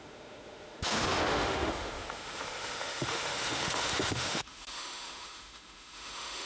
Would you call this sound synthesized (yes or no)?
yes